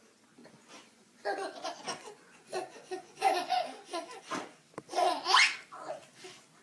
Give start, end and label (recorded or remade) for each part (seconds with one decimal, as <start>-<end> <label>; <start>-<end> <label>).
0.0-0.4 recorded; 0.4-4.2 remade; 4.2-6.6 recorded